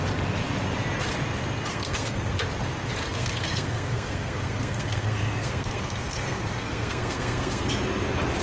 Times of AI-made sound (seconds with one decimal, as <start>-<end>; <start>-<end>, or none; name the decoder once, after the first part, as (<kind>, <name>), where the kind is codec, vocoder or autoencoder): 1.7-2.3 (codec, SNAC); 3.0-7.7